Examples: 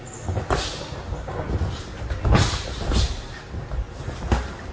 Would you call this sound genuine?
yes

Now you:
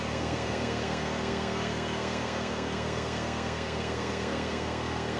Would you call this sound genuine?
no